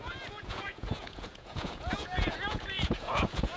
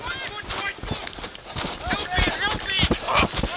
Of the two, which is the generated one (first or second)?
first